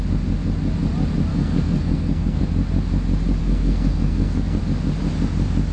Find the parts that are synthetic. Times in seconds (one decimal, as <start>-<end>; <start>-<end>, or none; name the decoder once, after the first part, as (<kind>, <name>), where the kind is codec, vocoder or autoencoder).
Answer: 1.3-2.4 (codec, SNAC); 3.4-4.6